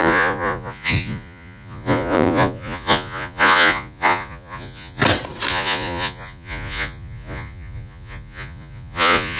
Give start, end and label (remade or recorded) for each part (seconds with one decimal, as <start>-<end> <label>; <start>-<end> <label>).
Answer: 0.0-5.0 remade; 5.0-5.5 recorded; 5.5-9.4 remade